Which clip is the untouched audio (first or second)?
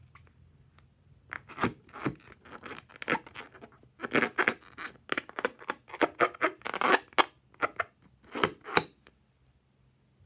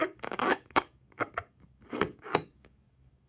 first